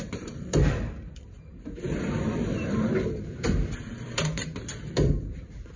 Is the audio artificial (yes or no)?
yes